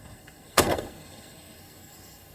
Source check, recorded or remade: remade